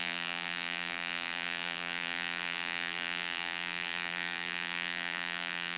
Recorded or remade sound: remade